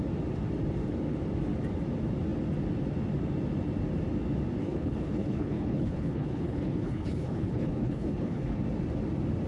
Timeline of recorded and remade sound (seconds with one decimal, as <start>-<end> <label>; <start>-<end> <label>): 0.0-4.6 recorded; 4.6-8.6 remade; 8.6-9.5 recorded